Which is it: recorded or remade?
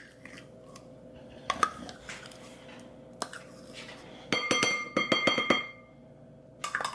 recorded